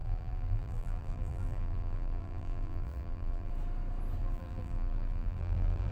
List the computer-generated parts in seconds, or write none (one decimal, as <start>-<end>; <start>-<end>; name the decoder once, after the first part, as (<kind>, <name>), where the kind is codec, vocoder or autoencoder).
0.0-3.5 (vocoder, BigVGAN v2); 4.2-5.9